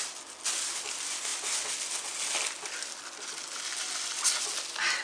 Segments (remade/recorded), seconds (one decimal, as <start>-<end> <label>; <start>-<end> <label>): 0.0-5.0 recorded